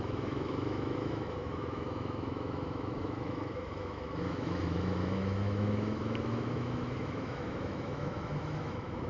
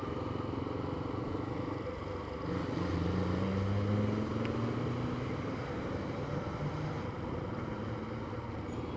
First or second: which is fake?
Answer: first